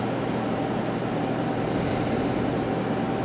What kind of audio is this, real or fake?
real